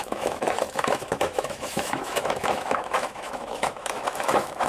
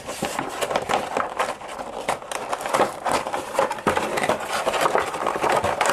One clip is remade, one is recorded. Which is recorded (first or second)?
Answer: second